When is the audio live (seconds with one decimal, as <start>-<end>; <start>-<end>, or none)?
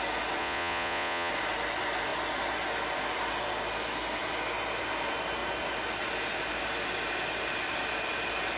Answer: 0.0-0.4; 1.3-8.6